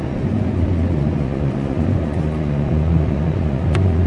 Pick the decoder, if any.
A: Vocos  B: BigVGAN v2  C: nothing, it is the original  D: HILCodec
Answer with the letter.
A